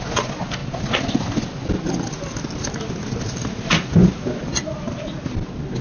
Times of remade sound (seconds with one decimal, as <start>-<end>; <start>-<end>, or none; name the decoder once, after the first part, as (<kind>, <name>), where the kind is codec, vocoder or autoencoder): none